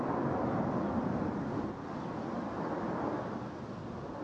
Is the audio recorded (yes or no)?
yes